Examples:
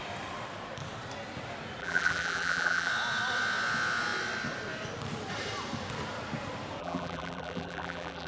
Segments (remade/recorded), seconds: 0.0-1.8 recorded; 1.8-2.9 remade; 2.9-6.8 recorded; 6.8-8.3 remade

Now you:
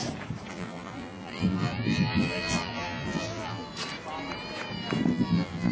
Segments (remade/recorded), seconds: 0.0-0.5 recorded; 0.5-3.7 remade; 3.7-5.1 recorded; 5.1-5.7 remade

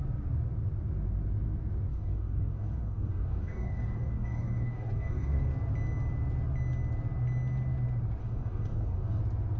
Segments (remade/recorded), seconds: 0.0-1.9 recorded; 1.9-5.5 remade; 5.5-8.2 recorded; 8.2-9.2 remade; 9.2-9.6 recorded

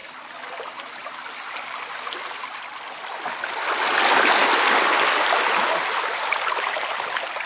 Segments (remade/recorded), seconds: 0.0-7.5 recorded

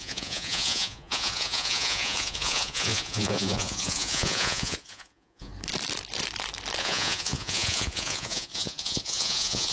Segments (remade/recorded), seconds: 0.0-5.5 remade; 5.5-6.8 recorded; 6.8-9.7 remade